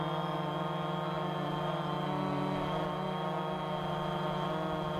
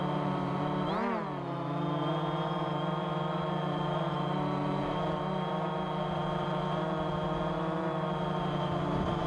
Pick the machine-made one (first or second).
second